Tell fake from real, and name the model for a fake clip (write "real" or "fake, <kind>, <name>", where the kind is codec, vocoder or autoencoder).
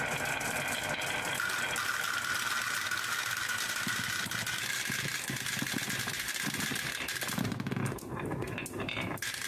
real